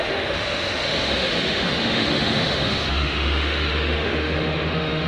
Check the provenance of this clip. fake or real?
fake